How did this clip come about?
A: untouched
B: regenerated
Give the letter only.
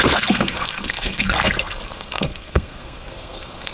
B